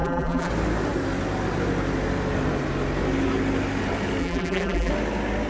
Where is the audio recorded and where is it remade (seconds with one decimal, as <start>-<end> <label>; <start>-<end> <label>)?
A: 0.0-0.5 remade; 0.5-4.2 recorded; 4.2-4.9 remade; 4.9-5.5 recorded